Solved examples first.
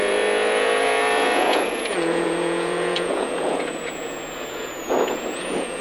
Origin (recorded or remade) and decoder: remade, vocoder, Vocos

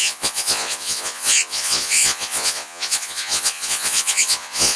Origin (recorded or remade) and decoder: remade, vocoder, Vocos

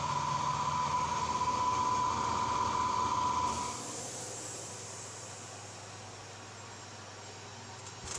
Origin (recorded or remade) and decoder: recorded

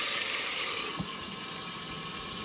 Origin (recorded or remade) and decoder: recorded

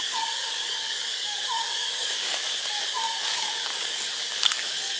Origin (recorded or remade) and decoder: remade, codec, DAC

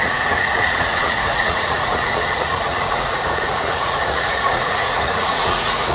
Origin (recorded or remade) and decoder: remade, vocoder, Vocos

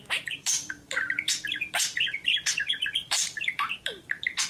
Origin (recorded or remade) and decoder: remade, vocoder, BigVGAN v2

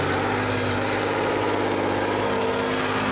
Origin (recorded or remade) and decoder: recorded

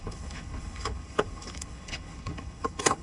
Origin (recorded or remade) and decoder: remade, codec, HILCodec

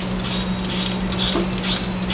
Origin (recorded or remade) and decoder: recorded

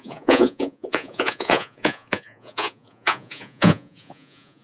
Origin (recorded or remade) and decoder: remade, vocoder, Vocos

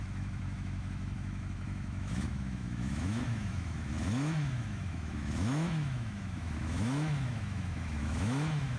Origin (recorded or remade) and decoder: remade, autoencoder, DAC-VAE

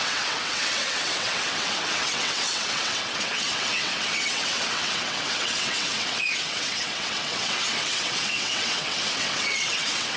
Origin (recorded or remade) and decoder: remade, vocoder, WaveNeXt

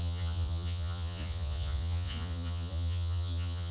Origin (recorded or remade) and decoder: remade, vocoder, Vocos